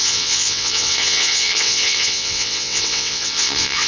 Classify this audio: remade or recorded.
remade